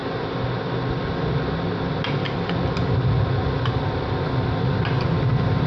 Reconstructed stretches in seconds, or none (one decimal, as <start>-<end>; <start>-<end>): none